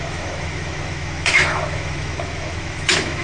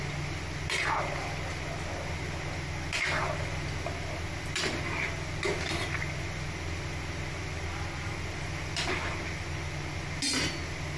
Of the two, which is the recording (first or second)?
second